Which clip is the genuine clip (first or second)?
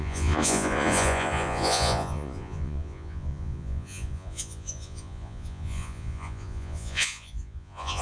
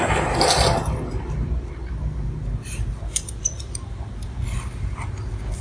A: second